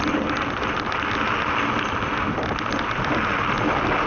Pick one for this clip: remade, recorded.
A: recorded